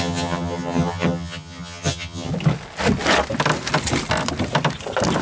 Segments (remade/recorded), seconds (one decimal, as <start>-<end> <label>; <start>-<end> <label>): 0.0-2.3 remade; 2.3-5.2 recorded